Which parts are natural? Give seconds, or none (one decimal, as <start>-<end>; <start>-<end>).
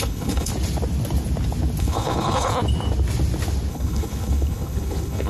0.5-1.8; 2.5-3.7